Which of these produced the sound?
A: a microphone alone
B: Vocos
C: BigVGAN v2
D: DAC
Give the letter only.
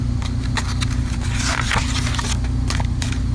A